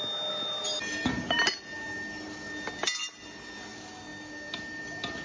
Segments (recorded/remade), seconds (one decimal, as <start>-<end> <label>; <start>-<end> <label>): 0.0-5.2 recorded